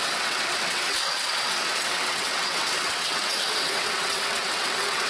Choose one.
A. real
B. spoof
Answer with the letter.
B